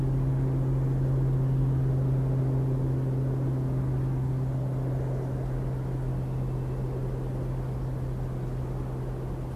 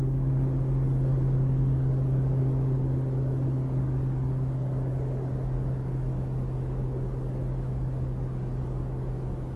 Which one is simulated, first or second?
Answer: second